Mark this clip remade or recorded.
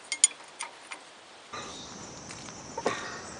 recorded